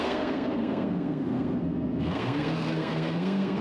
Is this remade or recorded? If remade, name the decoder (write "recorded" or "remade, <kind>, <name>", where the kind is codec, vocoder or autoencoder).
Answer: remade, codec, SNAC